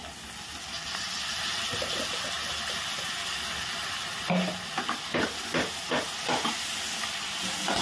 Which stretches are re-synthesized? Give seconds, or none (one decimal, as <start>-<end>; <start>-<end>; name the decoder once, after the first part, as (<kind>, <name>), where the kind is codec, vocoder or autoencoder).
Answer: none